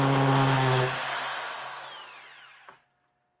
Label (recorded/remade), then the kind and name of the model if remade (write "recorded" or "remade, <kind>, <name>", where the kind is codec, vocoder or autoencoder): recorded